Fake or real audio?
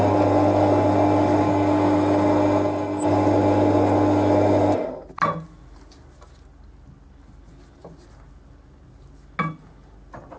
real